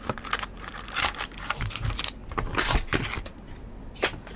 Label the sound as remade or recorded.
recorded